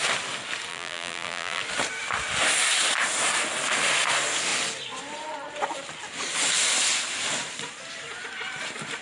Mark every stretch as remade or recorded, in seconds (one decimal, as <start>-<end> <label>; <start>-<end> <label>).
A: 0.0-0.7 recorded; 0.7-1.6 remade; 1.6-9.0 recorded